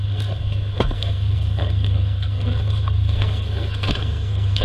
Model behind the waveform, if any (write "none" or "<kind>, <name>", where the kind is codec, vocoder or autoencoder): codec, SNAC